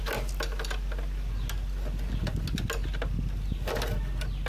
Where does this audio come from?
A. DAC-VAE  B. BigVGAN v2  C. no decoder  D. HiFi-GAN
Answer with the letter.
C